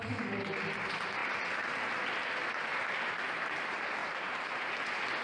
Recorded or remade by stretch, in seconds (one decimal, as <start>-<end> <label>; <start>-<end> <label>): 0.0-1.2 recorded; 1.2-2.0 remade; 2.0-4.0 recorded; 4.0-4.7 remade; 4.7-5.2 recorded